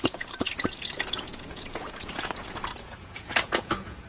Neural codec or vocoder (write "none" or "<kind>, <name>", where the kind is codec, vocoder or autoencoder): vocoder, Vocos